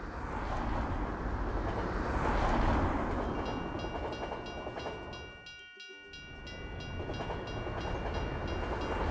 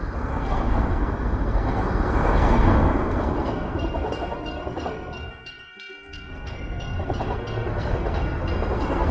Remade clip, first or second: second